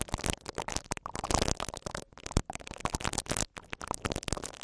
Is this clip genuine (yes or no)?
yes